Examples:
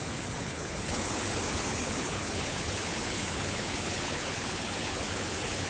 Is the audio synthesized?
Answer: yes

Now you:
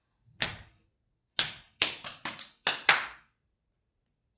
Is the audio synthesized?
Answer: no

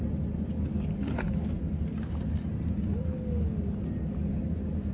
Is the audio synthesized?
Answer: no